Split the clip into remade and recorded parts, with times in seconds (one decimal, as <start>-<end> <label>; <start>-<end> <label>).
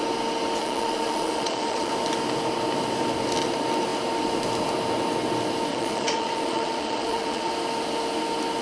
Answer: 0.0-0.6 recorded; 0.6-1.9 remade; 1.9-5.7 recorded; 5.7-7.5 remade; 7.5-8.6 recorded